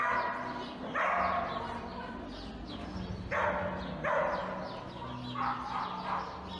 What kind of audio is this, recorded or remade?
recorded